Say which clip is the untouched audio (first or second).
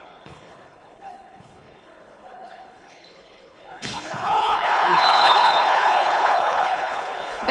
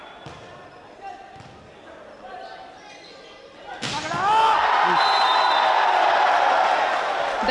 second